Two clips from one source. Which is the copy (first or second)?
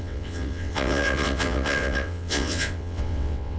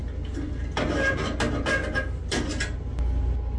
first